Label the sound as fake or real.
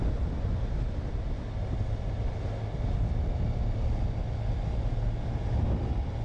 real